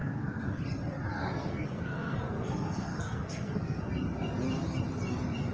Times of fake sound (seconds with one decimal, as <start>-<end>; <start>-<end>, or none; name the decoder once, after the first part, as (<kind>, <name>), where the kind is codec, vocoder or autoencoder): 0.0-0.6 (codec, SNAC); 1.2-3.9